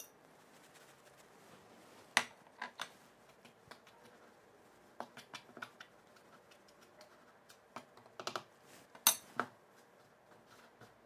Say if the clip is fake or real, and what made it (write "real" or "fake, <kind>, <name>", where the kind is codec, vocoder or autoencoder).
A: real